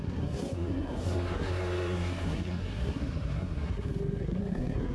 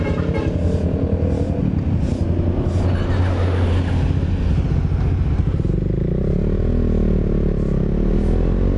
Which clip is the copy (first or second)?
first